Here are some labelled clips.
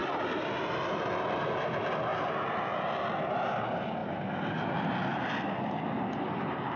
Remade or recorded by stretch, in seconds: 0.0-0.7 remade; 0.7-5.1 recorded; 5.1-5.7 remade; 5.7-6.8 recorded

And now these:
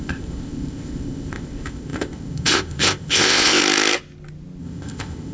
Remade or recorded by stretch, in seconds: 0.0-3.6 remade; 3.6-4.6 recorded; 4.6-5.3 remade

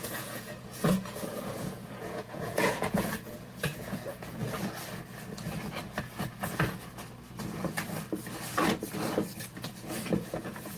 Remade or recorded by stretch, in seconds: 0.0-4.4 remade; 4.4-6.0 recorded; 6.0-6.9 remade; 6.9-9.7 recorded; 9.7-10.8 remade

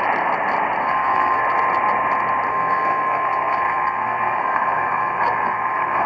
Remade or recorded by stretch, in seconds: 0.0-0.8 recorded; 0.8-1.4 remade; 1.4-2.5 recorded; 2.5-6.1 remade